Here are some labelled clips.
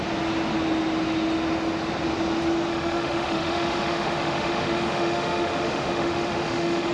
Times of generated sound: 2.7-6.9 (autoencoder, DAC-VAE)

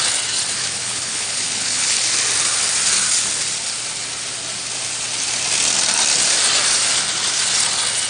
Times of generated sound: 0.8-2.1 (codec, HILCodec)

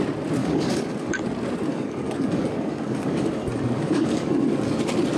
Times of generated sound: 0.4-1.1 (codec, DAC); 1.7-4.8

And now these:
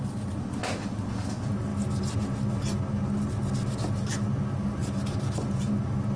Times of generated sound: 4.8-5.7 (vocoder, BigVGAN v2)

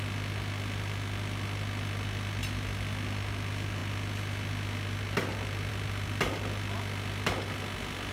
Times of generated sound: none

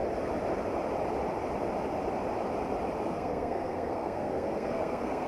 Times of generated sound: 3.0-5.3 (codec, SNAC)